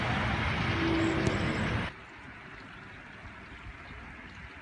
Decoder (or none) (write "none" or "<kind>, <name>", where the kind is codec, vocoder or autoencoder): none